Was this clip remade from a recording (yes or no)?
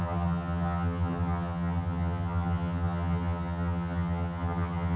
yes